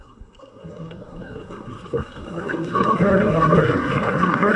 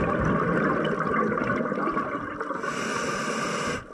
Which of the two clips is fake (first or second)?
first